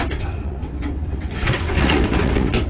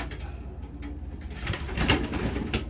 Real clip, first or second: second